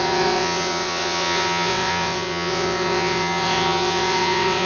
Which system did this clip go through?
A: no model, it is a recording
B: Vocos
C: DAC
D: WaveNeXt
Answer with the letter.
D